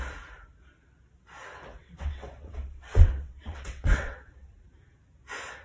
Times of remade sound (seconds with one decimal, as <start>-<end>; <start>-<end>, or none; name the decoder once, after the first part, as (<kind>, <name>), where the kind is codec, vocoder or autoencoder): 1.8-4.5 (vocoder, WaveNeXt)